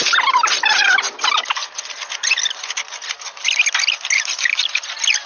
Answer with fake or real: real